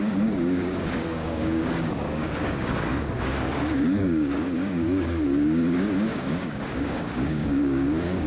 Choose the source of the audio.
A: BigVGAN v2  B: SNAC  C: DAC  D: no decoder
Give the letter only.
C